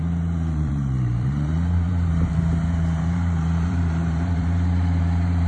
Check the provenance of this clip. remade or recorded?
remade